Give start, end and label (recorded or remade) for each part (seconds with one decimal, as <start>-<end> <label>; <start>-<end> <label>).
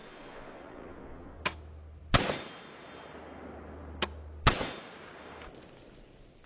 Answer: 0.0-1.4 remade; 1.4-6.5 recorded